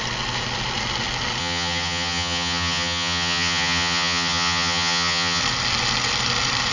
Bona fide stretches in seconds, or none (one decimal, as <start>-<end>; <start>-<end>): 0.0-1.4; 5.4-6.7